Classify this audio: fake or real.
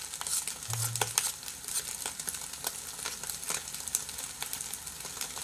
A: real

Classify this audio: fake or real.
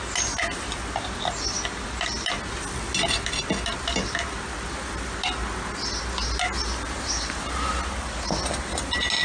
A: real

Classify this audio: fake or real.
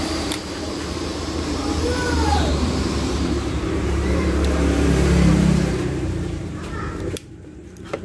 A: fake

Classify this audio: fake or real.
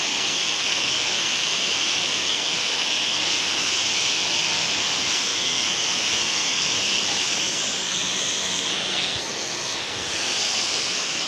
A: fake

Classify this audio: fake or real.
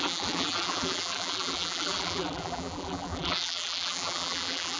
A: fake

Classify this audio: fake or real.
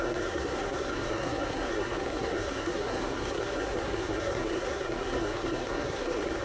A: fake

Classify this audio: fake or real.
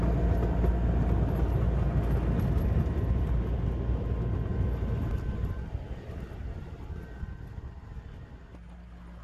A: real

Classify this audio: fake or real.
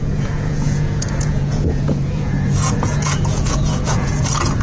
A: fake